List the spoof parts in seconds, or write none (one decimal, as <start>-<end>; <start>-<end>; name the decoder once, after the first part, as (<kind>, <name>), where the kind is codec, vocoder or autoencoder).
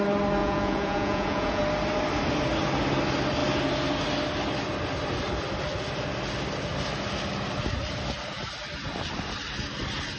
0.4-1.6 (vocoder, Vocos)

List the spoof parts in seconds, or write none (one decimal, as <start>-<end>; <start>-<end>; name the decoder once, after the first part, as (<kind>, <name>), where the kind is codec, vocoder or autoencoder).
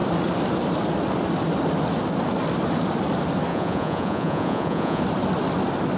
3.5-5.0 (vocoder, Vocos)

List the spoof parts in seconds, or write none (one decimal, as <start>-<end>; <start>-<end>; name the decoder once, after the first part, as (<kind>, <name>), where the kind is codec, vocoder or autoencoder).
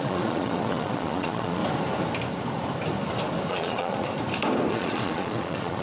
0.0-1.6 (vocoder, Vocos); 3.5-4.1; 4.7-5.8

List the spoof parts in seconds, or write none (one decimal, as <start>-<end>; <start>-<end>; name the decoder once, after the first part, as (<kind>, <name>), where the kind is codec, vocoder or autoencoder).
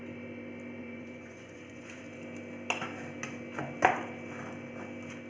0.8-2.0 (vocoder, Vocos)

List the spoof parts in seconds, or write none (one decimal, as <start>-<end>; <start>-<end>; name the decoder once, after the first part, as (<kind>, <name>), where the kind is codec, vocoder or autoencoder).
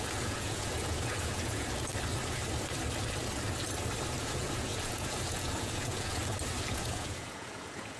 0.0-1.9 (vocoder, Vocos); 4.2-6.2; 6.7-8.0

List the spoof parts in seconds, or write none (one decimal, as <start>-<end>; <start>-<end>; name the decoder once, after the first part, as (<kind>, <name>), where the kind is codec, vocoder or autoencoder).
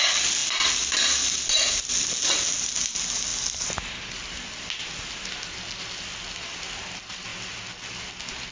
none